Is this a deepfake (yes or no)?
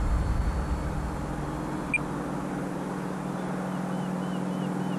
no